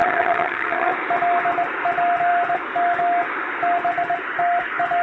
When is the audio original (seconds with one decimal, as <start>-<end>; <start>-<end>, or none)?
0.9-5.0